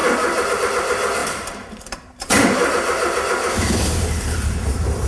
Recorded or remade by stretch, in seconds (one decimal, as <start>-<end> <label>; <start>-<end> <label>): 0.0-1.2 recorded; 1.2-2.7 remade; 2.7-5.1 recorded